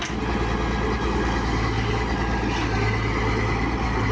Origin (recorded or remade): recorded